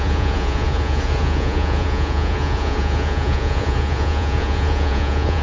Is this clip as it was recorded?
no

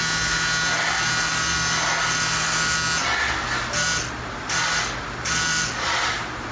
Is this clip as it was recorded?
yes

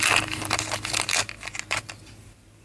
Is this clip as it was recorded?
yes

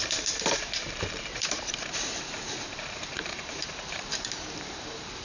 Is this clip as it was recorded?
no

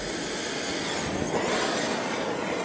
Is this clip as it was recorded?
yes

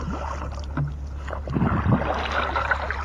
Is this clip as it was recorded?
yes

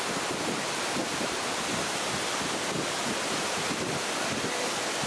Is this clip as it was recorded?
yes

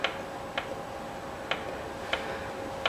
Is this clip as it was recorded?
yes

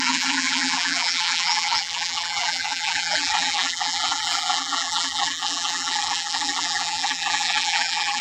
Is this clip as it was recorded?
no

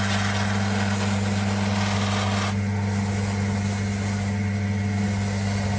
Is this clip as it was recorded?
yes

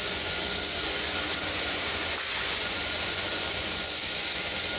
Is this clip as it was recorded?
no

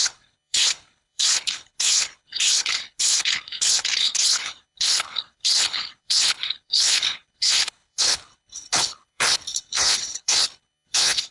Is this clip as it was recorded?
no